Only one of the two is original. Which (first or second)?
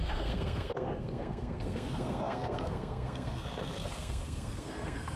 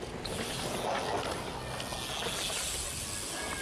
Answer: second